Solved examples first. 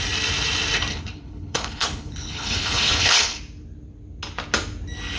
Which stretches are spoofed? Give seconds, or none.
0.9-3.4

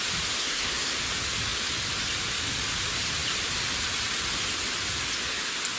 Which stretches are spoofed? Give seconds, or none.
0.4-0.9